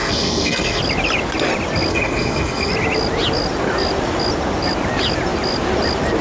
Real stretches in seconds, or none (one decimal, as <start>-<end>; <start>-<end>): 0.8-1.9; 2.7-6.2